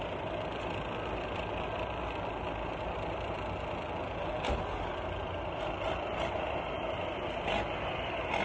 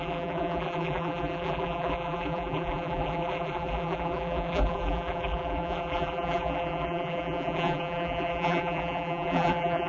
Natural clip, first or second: first